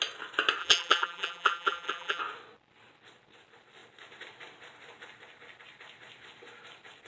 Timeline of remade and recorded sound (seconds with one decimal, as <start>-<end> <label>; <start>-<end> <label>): 0.0-0.6 recorded; 0.6-2.2 remade; 2.2-7.1 recorded